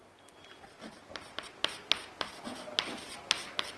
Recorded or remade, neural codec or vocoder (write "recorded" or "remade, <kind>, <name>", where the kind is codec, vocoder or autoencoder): recorded